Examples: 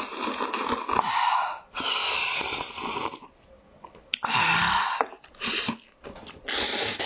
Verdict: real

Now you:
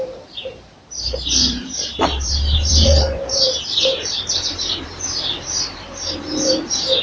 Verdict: fake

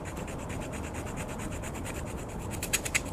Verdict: real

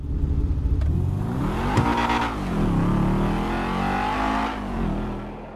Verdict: real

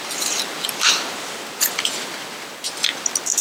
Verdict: real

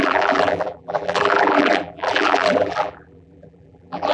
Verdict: fake